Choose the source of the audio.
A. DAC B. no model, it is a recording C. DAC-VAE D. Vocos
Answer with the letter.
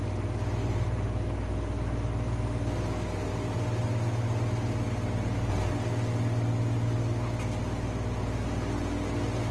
B